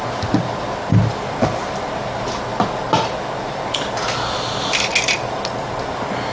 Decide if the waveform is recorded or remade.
recorded